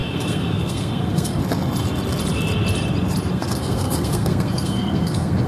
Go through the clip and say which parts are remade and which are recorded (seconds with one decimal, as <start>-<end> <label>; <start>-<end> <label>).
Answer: 0.0-1.4 remade; 1.4-3.3 recorded; 3.3-5.5 remade